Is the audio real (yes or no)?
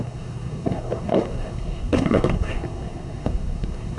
no